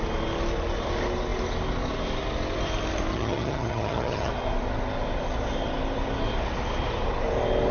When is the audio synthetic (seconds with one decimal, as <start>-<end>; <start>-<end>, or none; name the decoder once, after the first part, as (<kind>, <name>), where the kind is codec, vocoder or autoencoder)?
3.1-4.3 (vocoder, HiFi-GAN)